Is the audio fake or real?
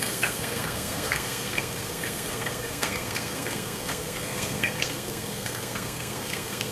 fake